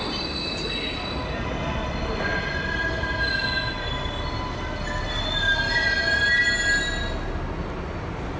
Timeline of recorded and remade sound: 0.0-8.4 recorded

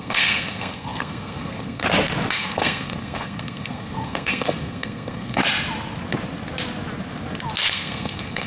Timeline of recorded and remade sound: 0.0-1.8 remade; 1.8-2.3 recorded; 2.3-5.4 remade; 5.4-7.7 recorded; 7.7-8.5 remade

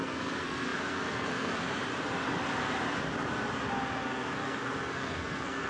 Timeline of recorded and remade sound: 0.0-1.8 remade; 1.8-4.0 recorded; 4.0-5.7 remade

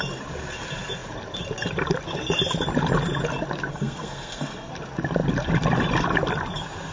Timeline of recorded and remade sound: 0.0-3.7 recorded; 3.7-4.7 remade; 4.7-6.9 recorded